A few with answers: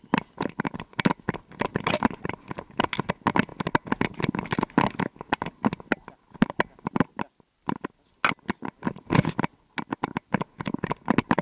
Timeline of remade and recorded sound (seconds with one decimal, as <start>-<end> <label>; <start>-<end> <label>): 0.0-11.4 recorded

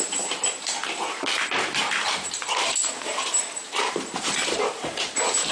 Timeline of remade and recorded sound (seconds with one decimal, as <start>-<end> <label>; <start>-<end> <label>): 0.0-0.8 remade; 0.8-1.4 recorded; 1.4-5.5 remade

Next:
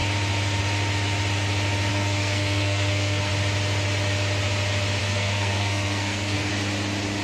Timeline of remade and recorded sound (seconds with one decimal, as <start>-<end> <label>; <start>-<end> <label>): 0.0-1.9 recorded; 1.9-3.3 remade; 3.3-5.0 recorded; 5.0-6.5 remade; 6.5-7.2 recorded

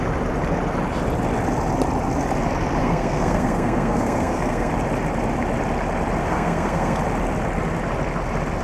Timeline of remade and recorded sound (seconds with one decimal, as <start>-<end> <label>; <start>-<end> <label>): 0.0-2.8 recorded; 2.8-4.7 remade; 4.7-6.2 recorded; 6.2-7.0 remade; 7.0-8.6 recorded